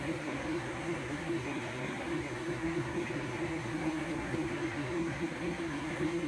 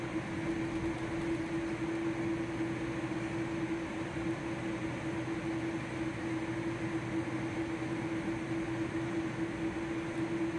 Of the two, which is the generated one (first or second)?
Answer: first